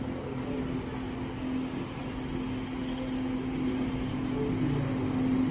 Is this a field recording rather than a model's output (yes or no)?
yes